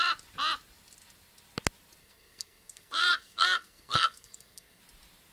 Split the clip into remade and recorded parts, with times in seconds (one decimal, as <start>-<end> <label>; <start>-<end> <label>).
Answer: 0.0-2.0 recorded; 2.0-4.8 remade; 4.8-5.3 recorded